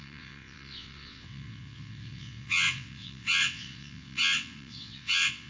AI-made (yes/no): yes